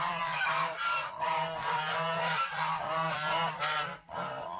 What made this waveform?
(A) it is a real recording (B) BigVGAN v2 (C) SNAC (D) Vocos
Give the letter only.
B